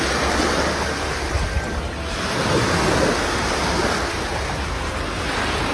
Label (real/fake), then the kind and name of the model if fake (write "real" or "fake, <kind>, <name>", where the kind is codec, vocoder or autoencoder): real